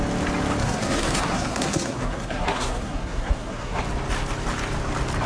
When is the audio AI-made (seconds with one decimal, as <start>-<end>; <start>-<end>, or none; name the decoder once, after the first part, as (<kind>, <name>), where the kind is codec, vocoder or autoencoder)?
0.6-3.8 (codec, SNAC)